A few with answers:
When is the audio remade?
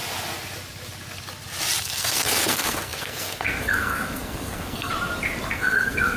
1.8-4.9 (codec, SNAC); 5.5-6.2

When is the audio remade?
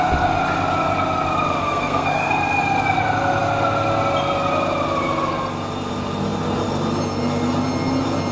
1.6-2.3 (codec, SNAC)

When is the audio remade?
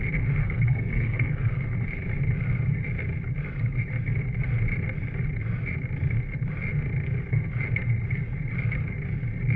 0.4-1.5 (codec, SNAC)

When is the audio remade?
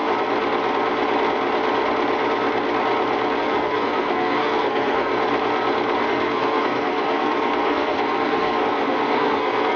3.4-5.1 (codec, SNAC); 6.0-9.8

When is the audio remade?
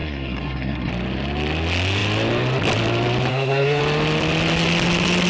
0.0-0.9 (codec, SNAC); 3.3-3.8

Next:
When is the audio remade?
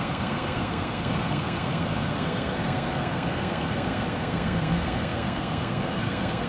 0.0-6.5 (codec, SNAC)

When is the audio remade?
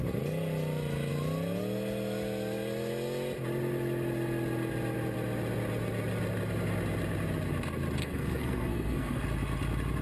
8.0-9.2 (codec, SNAC)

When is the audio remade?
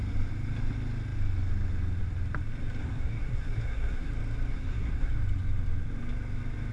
2.8-4.1 (codec, SNAC); 4.5-5.1